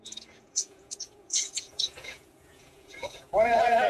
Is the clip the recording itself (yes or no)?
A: no